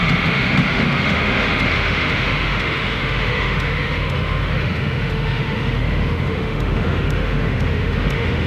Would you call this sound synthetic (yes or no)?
yes